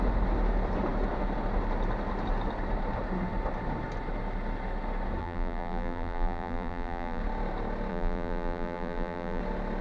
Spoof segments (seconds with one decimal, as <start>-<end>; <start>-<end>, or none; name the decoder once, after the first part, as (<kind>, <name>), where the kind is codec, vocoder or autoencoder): 5.2-7.2 (vocoder, BigVGAN v2); 7.9-9.4